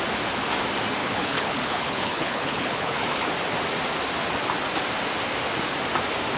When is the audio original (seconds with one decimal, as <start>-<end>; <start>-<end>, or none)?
0.0-1.0; 3.3-6.4